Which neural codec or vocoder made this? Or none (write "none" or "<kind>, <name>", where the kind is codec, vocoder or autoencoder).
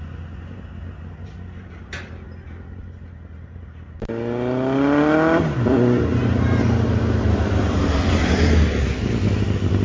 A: none